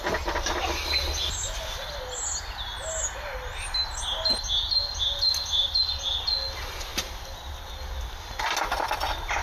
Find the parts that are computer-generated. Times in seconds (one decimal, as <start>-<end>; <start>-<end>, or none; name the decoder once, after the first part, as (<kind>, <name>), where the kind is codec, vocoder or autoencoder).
none